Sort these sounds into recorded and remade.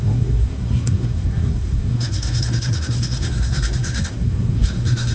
remade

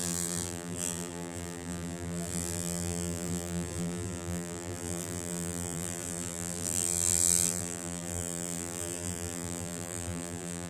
remade